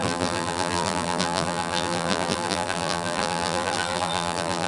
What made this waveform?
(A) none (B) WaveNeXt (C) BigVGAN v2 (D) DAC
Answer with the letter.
C